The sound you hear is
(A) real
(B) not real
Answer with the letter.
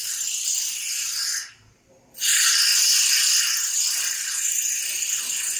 A